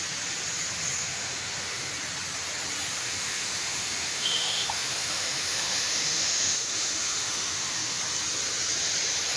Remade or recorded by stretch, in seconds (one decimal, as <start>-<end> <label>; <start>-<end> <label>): 0.0-1.0 recorded; 1.0-1.9 remade; 1.9-3.0 recorded; 3.0-8.0 remade; 8.0-9.4 recorded

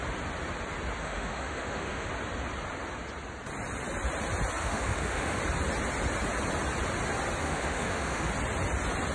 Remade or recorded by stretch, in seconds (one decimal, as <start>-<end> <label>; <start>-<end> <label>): 0.0-1.0 recorded; 1.0-2.1 remade; 2.1-4.6 recorded; 4.6-5.4 remade; 5.4-7.4 recorded; 7.4-8.3 remade; 8.3-9.1 recorded

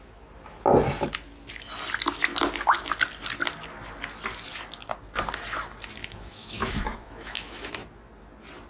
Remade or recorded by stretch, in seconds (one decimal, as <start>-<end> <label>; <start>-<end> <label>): 0.0-6.0 recorded; 6.0-7.7 remade; 7.7-8.7 recorded

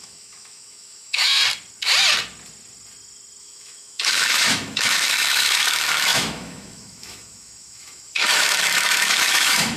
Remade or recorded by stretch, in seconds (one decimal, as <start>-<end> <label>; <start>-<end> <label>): 0.0-1.4 remade; 1.4-3.4 recorded; 3.4-9.8 remade

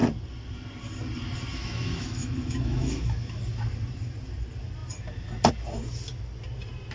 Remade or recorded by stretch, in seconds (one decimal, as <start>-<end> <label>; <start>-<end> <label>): 0.0-1.5 recorded; 1.5-3.4 remade; 3.4-6.9 recorded

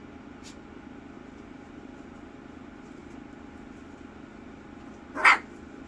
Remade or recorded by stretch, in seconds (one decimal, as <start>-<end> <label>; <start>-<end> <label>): 0.0-5.9 recorded